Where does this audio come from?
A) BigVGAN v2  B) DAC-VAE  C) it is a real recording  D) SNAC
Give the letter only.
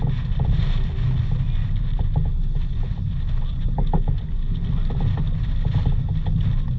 C